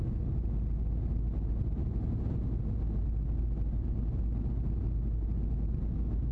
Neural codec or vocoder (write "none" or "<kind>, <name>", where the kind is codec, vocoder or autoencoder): none